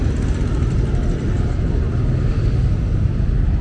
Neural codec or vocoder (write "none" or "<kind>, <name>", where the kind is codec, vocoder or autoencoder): none